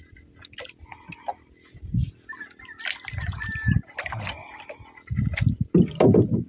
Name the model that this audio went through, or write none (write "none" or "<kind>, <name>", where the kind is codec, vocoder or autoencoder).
none